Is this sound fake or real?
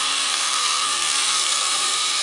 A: fake